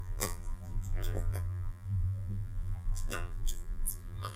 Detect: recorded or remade remade